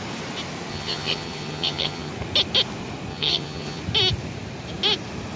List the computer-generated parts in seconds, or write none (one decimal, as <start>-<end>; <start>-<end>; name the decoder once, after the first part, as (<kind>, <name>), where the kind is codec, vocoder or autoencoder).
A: 0.7-2.1 (vocoder, HiFi-GAN); 3.1-3.8